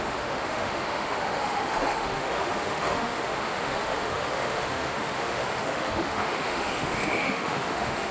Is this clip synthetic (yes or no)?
yes